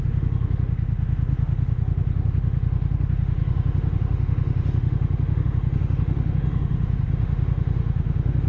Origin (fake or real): fake